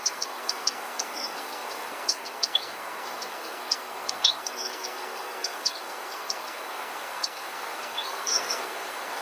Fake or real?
fake